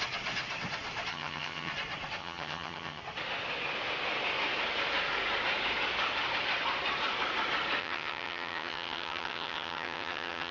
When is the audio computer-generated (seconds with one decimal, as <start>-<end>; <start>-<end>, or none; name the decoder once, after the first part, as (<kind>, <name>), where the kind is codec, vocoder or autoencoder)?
1.1-1.7 (vocoder, HiFi-GAN); 2.2-3.0; 7.8-10.5